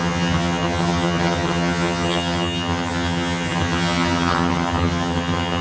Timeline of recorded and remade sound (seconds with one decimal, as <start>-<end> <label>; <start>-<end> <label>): 0.0-5.6 remade